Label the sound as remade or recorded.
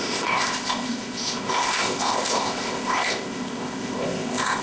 remade